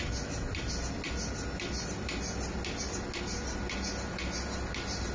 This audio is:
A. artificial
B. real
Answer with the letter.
B